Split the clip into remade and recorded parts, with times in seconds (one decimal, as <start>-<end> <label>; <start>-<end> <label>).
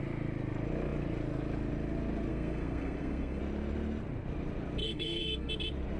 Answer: 0.0-2.3 recorded; 2.3-3.4 remade; 3.4-4.8 recorded; 4.8-5.5 remade; 5.5-6.0 recorded